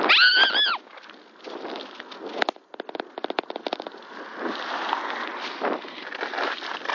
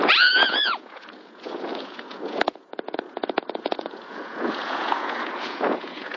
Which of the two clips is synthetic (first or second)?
second